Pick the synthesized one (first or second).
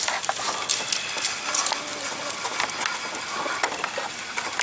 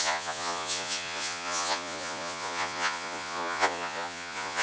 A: second